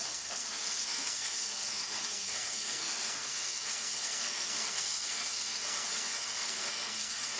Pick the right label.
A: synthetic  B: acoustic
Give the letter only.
A